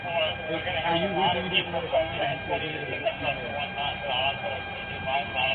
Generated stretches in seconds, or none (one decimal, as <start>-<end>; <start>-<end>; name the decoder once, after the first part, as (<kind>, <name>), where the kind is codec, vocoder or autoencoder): 1.6-2.3 (codec, SNAC); 2.7-3.2